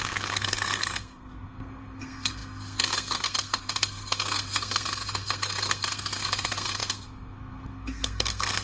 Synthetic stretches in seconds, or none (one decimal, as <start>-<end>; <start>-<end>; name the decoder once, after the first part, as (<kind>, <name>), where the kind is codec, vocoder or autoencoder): 0.0-8.6 (codec, SNAC)